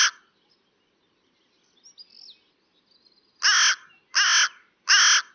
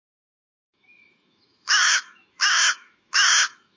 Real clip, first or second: first